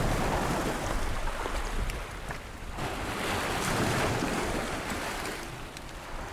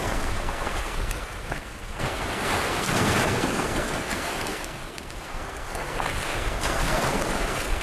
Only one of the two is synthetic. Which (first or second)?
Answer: second